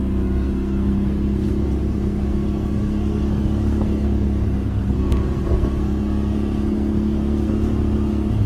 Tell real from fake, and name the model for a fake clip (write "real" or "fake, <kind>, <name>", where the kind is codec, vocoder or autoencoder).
fake, codec, SNAC